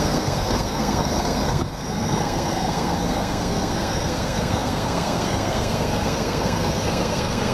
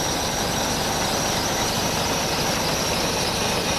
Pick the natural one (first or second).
second